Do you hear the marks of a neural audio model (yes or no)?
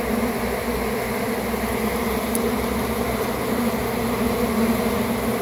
no